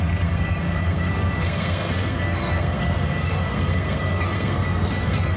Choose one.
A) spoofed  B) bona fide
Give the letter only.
A